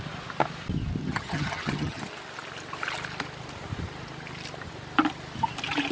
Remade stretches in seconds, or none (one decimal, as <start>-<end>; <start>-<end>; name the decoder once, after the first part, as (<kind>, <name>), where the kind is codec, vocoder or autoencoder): 1.0-2.0 (vocoder, HiFi-GAN)